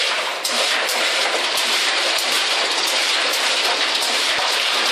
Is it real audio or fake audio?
fake